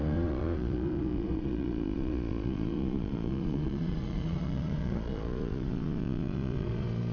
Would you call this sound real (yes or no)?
no